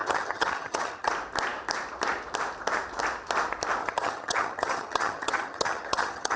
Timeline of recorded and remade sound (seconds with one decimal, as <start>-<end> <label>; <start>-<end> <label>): 0.0-1.1 remade; 1.1-3.8 recorded; 3.8-6.4 remade